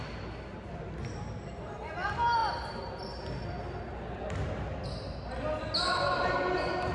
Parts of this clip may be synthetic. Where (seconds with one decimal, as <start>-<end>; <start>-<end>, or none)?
none